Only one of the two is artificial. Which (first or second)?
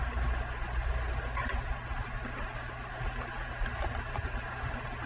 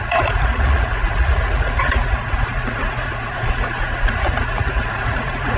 second